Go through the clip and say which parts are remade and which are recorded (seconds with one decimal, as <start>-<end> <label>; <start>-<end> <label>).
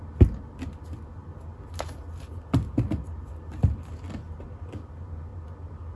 0.0-6.0 recorded